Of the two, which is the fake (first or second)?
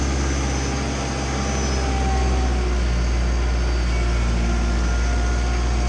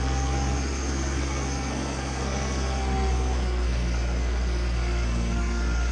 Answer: second